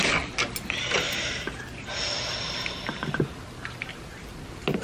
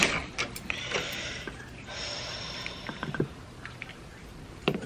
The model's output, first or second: second